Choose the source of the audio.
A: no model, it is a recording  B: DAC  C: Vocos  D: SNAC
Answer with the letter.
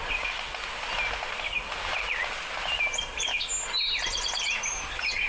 A